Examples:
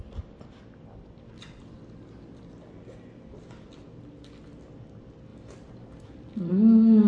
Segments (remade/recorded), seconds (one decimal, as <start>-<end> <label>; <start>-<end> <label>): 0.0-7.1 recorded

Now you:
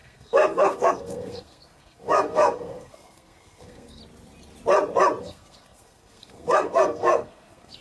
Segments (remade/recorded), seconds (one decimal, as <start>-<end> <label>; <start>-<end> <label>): 0.0-4.0 remade; 4.0-5.2 recorded; 5.2-7.8 remade

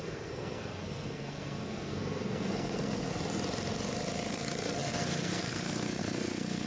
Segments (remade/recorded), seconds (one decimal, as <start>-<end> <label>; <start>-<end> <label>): 0.0-3.1 remade; 3.1-4.3 recorded; 4.3-6.7 remade

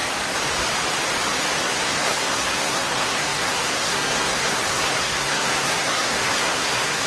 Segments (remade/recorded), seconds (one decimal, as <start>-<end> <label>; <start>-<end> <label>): 0.0-1.6 recorded; 1.6-7.1 remade

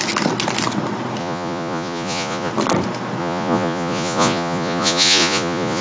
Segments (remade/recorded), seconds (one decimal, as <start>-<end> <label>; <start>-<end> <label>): 0.0-1.2 recorded; 1.2-2.5 remade; 2.5-3.2 recorded; 3.2-5.8 remade

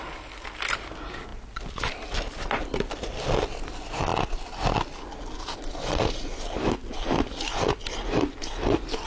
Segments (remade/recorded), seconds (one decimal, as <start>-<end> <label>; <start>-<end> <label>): 0.0-1.3 recorded; 1.3-3.2 remade; 3.2-9.1 recorded

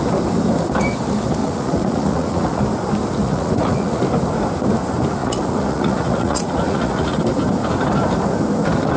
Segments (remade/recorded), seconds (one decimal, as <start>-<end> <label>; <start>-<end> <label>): 0.0-1.4 recorded; 1.4-2.6 remade; 2.6-3.2 recorded; 3.2-4.0 remade; 4.0-5.2 recorded; 5.2-7.2 remade; 7.2-9.0 recorded